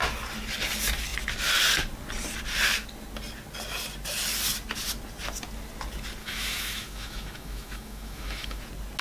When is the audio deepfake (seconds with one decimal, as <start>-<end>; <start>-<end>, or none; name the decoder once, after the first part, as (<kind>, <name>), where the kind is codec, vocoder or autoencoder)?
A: 6.2-8.6 (autoencoder, DAC-VAE)

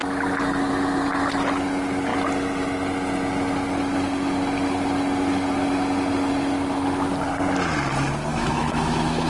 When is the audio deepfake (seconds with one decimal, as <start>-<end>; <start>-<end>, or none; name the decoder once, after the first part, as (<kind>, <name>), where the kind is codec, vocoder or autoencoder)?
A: 8.3-9.3 (autoencoder, DAC-VAE)

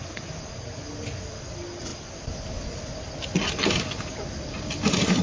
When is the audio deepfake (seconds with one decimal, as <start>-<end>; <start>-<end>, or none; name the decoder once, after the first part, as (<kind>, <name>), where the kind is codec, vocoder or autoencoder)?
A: none

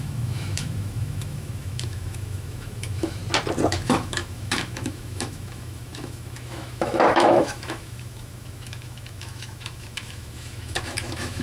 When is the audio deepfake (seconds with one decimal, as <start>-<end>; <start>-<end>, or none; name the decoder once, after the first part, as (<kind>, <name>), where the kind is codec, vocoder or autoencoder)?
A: 0.0-3.2 (autoencoder, DAC-VAE); 3.7-11.4

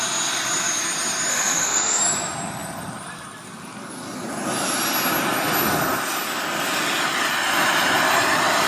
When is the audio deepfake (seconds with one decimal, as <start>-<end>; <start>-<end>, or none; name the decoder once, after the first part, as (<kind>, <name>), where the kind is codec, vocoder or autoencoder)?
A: 1.3-2.0 (autoencoder, DAC-VAE)

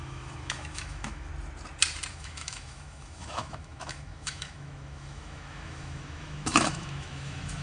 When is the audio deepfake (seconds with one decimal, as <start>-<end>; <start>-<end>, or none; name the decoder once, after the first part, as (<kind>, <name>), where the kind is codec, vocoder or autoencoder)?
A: 0.0-1.3 (autoencoder, DAC-VAE); 2.1-7.6

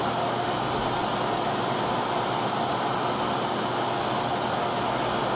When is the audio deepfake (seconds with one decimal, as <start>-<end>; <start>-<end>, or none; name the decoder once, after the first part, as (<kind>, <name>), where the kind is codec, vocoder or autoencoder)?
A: none